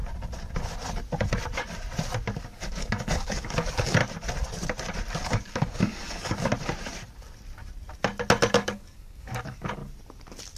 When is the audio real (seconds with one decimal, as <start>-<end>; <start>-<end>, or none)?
0.0-2.4; 4.0-5.2; 6.5-8.5; 9.8-10.6